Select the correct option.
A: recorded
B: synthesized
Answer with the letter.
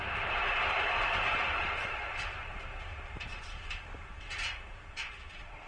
B